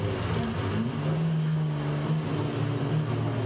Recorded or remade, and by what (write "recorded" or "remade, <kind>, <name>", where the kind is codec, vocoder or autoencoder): recorded